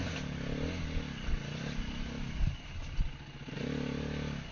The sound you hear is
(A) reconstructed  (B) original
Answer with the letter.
B